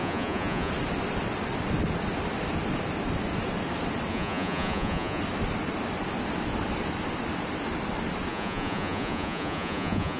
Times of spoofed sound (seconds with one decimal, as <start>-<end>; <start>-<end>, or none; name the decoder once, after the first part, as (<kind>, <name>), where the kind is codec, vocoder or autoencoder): 0.0-0.7 (vocoder, Vocos); 4.1-5.2; 8.3-10.2